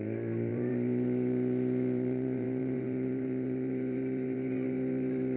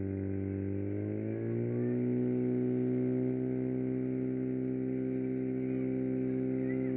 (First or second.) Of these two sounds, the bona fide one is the second